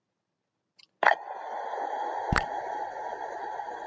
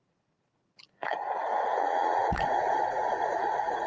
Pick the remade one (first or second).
second